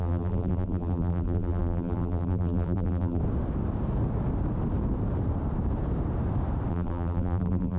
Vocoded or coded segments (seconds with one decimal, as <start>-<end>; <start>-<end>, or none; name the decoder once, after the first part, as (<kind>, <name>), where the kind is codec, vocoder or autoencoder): 0.0-3.2 (vocoder, BigVGAN v2); 6.7-7.8